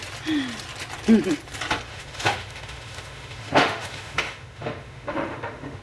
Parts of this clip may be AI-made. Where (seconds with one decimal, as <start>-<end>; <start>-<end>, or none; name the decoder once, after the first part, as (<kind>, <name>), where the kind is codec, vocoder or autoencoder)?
1.9-5.8 (autoencoder, DAC-VAE)